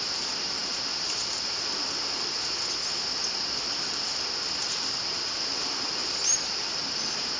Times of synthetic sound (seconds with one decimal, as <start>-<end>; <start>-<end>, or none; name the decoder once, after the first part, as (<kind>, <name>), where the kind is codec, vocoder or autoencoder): none